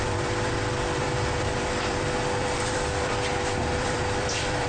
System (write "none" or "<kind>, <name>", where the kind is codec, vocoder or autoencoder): vocoder, BigVGAN v2